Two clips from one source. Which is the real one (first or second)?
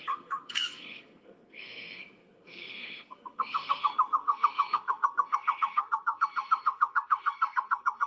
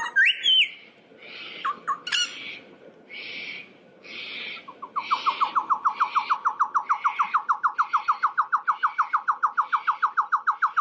second